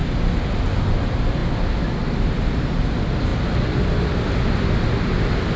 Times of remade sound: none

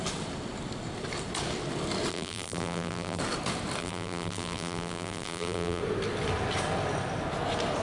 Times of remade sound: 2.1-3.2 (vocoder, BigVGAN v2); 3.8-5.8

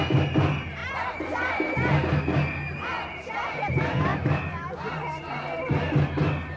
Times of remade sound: 0.8-1.5 (vocoder, BigVGAN v2)